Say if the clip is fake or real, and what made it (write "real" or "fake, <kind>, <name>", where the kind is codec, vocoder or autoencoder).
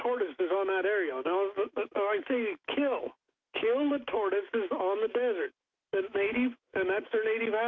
fake, autoencoder, DAC-VAE